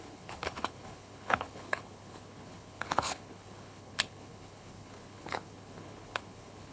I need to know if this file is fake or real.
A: fake